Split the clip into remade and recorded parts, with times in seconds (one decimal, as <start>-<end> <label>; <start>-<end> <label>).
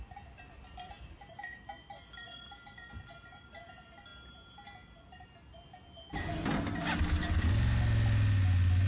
0.0-4.1 remade; 4.1-8.9 recorded